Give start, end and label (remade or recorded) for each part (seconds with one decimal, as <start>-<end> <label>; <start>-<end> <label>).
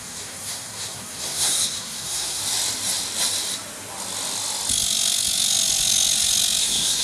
0.0-2.4 remade; 2.4-6.6 recorded; 6.6-7.0 remade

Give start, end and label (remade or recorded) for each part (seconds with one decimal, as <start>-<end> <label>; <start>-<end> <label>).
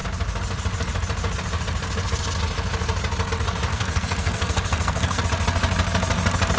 0.0-3.7 recorded; 3.7-5.2 remade; 5.2-6.6 recorded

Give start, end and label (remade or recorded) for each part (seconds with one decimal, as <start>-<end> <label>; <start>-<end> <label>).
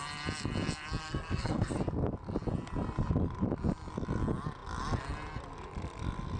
0.0-1.0 recorded; 1.0-1.7 remade; 1.7-6.4 recorded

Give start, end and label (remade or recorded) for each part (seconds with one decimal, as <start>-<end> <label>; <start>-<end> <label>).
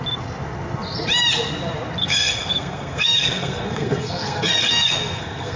0.0-2.0 recorded; 2.0-5.6 remade